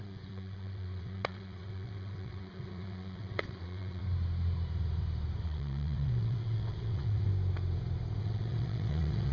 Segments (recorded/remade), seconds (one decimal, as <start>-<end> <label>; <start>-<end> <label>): 0.0-4.0 remade; 4.0-5.4 recorded; 5.4-7.3 remade; 7.3-8.2 recorded; 8.2-9.3 remade